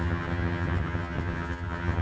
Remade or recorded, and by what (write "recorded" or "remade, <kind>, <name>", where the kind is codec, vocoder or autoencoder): remade, vocoder, HiFi-GAN